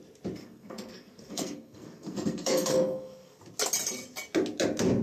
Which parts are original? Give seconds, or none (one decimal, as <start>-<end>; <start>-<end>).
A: 0.0-0.4; 3.4-5.0